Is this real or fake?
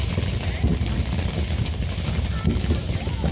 real